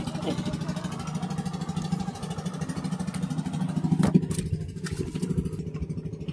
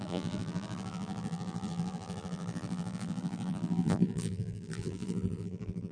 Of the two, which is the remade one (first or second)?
second